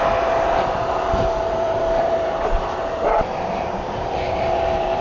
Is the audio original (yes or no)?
no